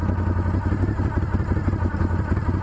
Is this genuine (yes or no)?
yes